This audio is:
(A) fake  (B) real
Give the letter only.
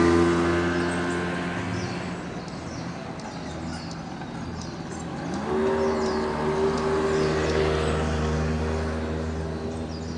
B